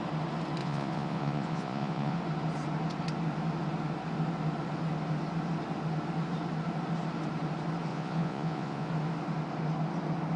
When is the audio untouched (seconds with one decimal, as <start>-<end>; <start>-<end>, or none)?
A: 0.0-0.6; 2.2-7.9; 8.9-10.4